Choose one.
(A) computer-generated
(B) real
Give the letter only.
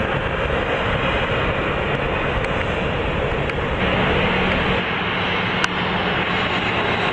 B